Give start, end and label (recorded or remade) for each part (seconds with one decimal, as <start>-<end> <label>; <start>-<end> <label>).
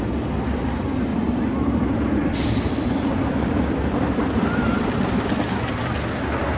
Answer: 0.0-1.1 recorded; 1.1-5.1 remade; 5.1-6.6 recorded